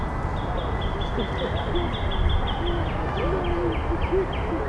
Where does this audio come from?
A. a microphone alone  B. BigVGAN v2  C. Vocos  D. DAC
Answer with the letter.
A